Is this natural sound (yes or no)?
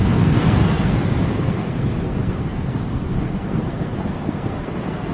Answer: no